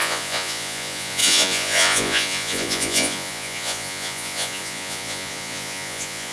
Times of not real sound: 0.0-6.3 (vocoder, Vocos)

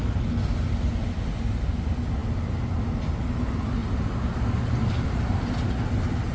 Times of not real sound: none

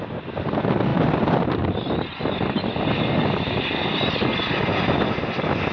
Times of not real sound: none

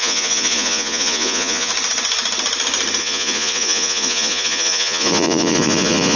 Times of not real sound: 0.0-1.7 (vocoder, Vocos); 3.0-6.2

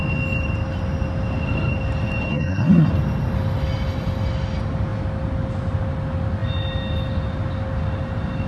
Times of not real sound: 2.3-2.9 (codec, SNAC)

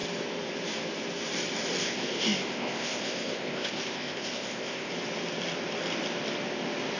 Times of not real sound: 1.8-4.9 (codec, ZipCodec)

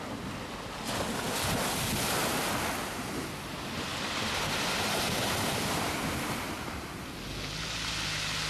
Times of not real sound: none